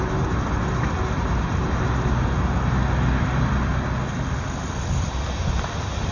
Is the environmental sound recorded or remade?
recorded